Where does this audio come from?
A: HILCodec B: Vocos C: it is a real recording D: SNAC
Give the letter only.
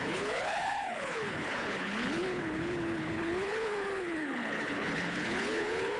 A